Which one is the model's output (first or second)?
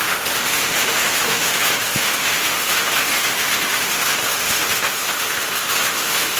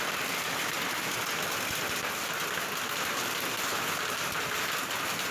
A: first